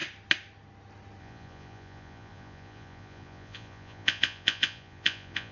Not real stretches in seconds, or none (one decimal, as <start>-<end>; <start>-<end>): 1.2-5.5